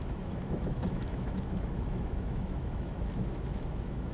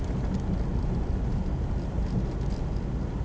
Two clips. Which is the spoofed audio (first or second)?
first